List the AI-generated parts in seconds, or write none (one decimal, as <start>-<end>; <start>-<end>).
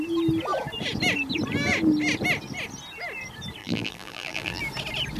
3.6-4.6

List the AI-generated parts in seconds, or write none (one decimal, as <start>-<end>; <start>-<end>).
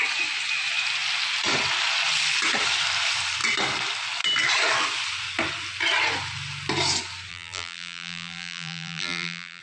7.3-9.6